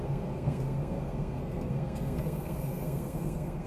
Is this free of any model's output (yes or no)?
no